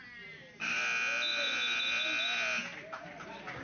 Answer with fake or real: real